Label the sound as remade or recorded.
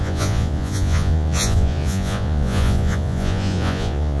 remade